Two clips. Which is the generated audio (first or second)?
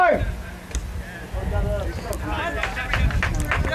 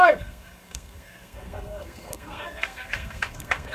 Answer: second